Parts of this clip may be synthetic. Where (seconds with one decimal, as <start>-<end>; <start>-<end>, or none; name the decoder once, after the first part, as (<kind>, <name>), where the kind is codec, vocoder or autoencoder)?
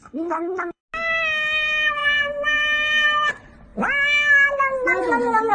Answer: 0.0-0.8 (codec, HILCodec)